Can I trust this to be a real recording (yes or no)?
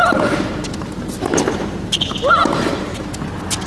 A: yes